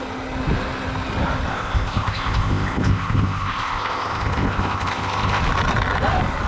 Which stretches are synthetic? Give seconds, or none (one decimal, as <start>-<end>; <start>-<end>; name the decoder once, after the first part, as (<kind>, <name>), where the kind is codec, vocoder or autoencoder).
1.5-5.4 (codec, ZipCodec)